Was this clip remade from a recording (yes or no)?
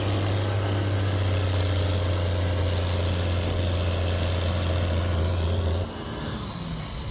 no